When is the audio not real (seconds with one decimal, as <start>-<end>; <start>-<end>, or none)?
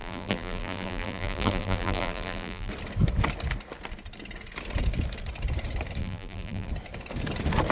0.0-2.7; 6.0-6.7